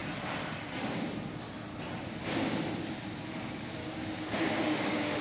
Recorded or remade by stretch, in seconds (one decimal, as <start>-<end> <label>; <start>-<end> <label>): 0.0-3.8 recorded; 3.8-5.2 remade